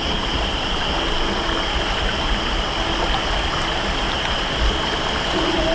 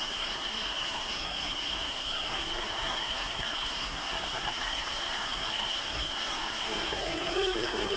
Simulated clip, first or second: second